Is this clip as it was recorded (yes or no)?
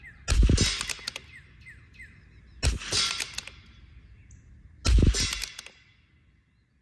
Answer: yes